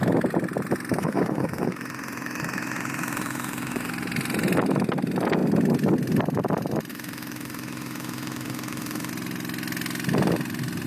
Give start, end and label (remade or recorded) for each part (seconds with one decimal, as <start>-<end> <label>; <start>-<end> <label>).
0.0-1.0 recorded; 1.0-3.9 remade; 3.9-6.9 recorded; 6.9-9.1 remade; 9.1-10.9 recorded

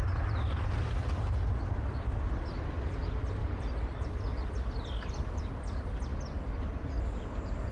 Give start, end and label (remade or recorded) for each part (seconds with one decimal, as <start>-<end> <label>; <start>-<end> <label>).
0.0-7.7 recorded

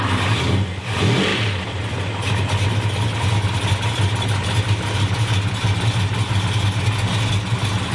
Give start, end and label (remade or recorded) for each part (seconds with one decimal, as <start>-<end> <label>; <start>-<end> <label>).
0.0-7.9 recorded

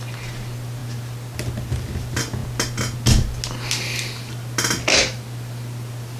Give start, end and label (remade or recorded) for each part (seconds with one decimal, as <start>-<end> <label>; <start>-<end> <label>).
0.0-6.2 recorded

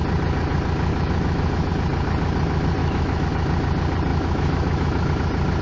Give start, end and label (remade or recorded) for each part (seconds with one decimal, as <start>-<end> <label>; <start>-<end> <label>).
0.0-0.9 recorded; 0.9-1.7 remade; 1.7-2.8 recorded; 2.8-3.3 remade; 3.3-4.1 recorded; 4.1-5.1 remade; 5.1-5.6 recorded

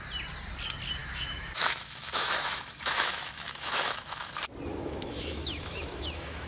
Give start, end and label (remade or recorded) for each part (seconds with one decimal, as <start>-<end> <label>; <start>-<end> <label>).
0.0-1.0 recorded; 1.0-4.3 remade; 4.3-4.7 recorded; 4.7-6.5 remade

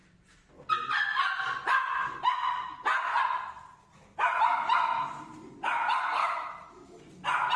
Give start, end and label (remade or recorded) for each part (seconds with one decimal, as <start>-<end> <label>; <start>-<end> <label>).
0.0-6.2 recorded; 6.2-7.0 remade; 7.0-7.6 recorded